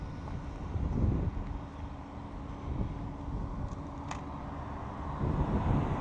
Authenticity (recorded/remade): recorded